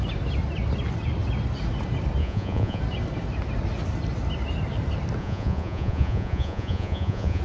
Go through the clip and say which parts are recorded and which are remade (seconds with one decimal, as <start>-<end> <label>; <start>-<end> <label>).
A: 0.0-2.2 recorded; 2.2-2.8 remade; 2.8-5.2 recorded; 5.2-7.4 remade